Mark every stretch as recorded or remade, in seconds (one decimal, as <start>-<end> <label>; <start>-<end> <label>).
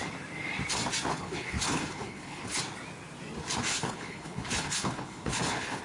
0.0-1.1 recorded; 1.1-2.6 remade; 2.6-3.7 recorded; 3.7-5.8 remade